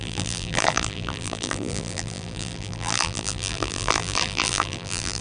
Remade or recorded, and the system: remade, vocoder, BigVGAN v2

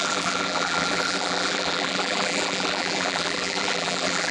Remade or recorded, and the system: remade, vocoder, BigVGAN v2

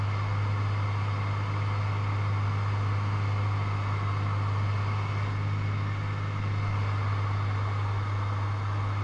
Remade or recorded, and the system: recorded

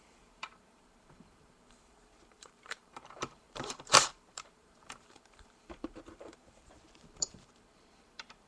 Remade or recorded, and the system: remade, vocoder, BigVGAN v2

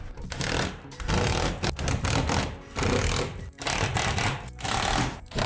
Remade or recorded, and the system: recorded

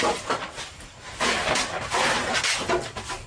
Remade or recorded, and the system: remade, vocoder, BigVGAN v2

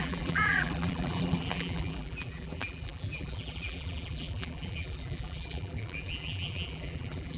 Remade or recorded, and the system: remade, vocoder, BigVGAN v2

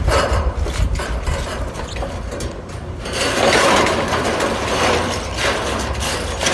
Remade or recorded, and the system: recorded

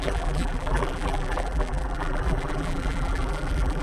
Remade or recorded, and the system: remade, vocoder, BigVGAN v2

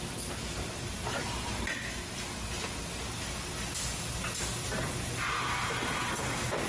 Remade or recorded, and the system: recorded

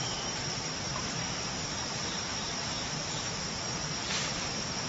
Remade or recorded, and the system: remade, vocoder, BigVGAN v2